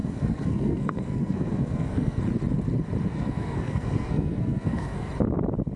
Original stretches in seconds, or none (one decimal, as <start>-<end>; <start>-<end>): 2.2-3.1; 5.1-5.8